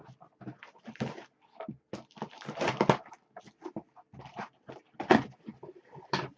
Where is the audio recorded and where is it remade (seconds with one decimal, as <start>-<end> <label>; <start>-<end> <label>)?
0.0-6.4 recorded